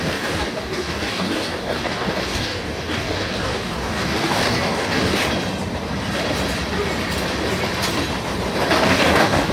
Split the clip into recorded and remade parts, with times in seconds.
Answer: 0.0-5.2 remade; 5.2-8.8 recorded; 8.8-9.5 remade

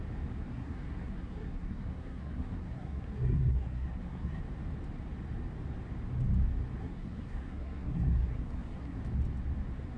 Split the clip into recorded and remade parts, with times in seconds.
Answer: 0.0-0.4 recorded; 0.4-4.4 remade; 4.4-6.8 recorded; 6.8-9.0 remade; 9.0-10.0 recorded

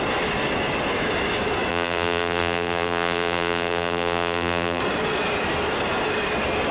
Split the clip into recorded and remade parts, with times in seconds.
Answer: 0.0-1.7 recorded; 1.7-4.8 remade; 4.8-6.7 recorded